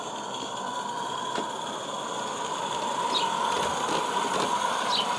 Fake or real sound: real